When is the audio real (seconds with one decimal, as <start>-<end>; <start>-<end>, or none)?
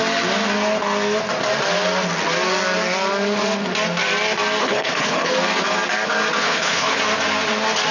0.0-4.6; 5.3-6.4; 7.0-7.9